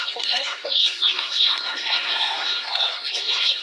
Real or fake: fake